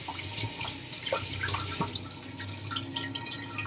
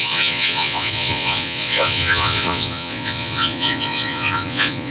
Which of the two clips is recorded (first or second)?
first